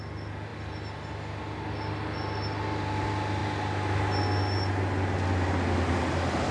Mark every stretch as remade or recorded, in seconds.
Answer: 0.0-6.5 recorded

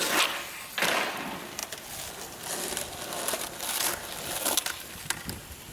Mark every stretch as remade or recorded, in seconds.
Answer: 0.0-5.7 recorded